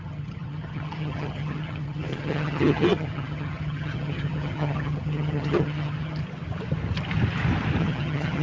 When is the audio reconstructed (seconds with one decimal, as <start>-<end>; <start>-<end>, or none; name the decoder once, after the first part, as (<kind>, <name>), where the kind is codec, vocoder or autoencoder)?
0.0-6.2 (vocoder, HiFi-GAN); 7.8-8.4